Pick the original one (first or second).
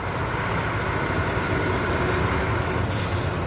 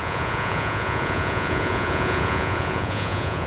first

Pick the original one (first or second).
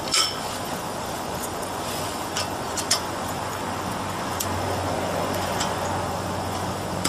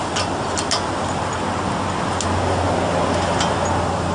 second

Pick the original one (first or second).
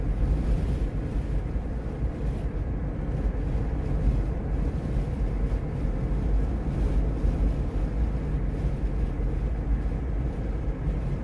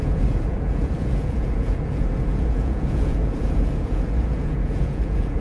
first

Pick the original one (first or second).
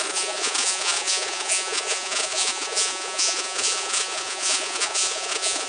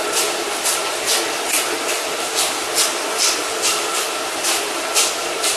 second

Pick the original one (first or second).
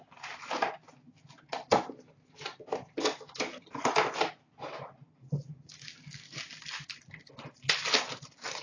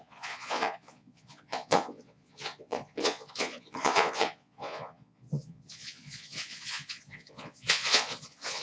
first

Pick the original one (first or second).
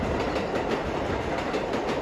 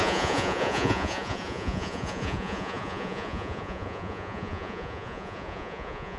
first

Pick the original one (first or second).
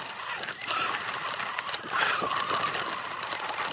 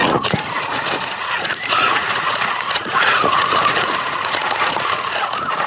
first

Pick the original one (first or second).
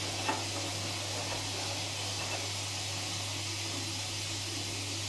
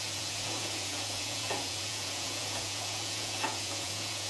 first